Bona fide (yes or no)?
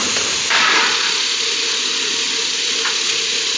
no